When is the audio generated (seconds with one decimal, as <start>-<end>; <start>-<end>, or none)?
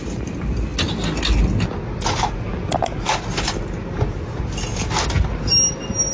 none